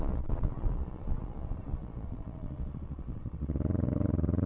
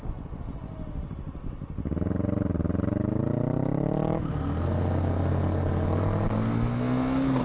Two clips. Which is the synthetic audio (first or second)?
first